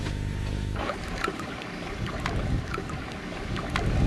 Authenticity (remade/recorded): remade